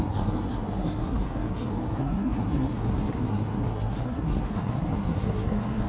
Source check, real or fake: fake